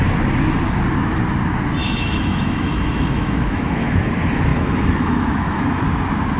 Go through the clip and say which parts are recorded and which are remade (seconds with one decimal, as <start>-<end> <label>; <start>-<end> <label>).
0.0-1.8 recorded; 1.8-4.1 remade; 4.1-4.5 recorded; 4.5-5.8 remade; 5.8-6.4 recorded